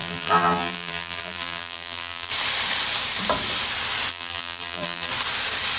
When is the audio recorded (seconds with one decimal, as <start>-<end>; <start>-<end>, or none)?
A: 2.3-4.1; 5.1-5.8